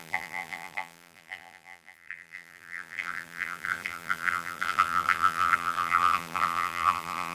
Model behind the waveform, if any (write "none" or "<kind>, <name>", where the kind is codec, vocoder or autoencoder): vocoder, BigVGAN v2